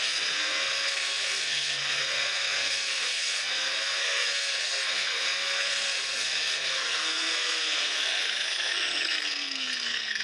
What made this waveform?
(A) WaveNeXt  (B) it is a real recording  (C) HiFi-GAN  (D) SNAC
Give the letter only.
D